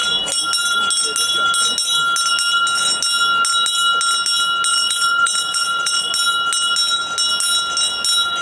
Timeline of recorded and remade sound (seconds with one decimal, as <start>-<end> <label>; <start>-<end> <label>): 0.0-4.7 recorded; 4.7-6.1 remade; 6.1-8.4 recorded